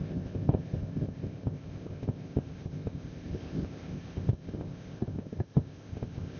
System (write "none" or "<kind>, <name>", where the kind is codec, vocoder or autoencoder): codec, ZipCodec